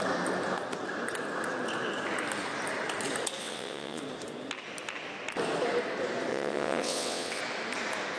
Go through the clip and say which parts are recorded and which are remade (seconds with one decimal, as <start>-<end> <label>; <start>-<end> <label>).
0.0-3.4 recorded; 3.4-4.0 remade; 4.0-6.3 recorded; 6.3-7.4 remade; 7.4-8.2 recorded